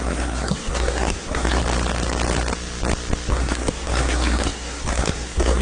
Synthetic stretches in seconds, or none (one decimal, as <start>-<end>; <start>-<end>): 0.0-1.6; 3.3-5.6